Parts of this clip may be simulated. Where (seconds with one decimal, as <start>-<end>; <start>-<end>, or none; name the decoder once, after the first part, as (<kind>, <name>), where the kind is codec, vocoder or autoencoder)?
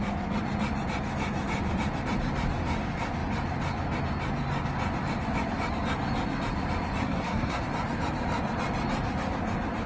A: 7.0-7.6 (codec, SNAC)